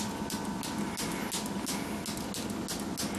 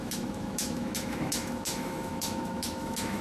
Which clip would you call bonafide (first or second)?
first